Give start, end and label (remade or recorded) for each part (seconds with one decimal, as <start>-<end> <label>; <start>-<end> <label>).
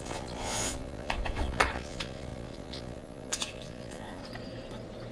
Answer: 0.0-4.2 remade; 4.2-5.1 recorded